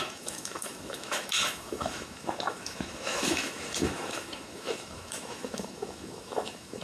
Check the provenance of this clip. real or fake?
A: fake